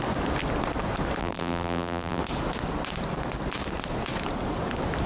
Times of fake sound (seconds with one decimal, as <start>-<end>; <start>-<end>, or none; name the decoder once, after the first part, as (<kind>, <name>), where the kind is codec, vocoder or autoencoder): 1.2-2.2 (vocoder, BigVGAN v2)